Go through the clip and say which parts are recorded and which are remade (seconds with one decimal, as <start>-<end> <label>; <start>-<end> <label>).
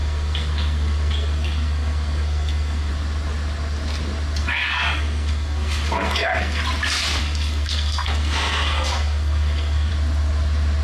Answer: 0.0-2.9 remade; 2.9-4.4 recorded; 4.4-6.6 remade; 6.6-7.2 recorded; 7.2-9.9 remade; 9.9-10.8 recorded